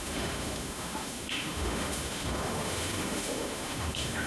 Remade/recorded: remade